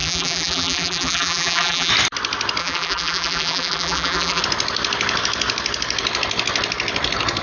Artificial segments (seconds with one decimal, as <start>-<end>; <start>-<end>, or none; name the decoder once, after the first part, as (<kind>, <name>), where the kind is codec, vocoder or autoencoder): 0.0-1.9 (vocoder, BigVGAN v2); 2.6-4.4